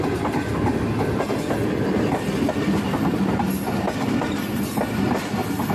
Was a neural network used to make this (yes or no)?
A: no